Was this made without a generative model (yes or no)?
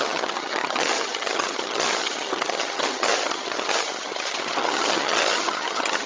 no